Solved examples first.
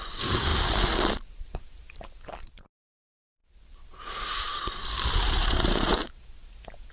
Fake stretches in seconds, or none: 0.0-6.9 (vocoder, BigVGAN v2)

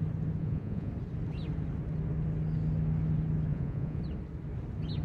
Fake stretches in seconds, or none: 0.4-0.9 (vocoder, Vocos); 3.5-4.0

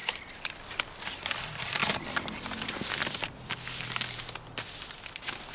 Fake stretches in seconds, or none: 0.0-1.8 (vocoder, BigVGAN v2); 5.1-5.5